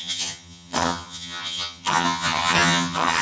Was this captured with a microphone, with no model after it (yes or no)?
no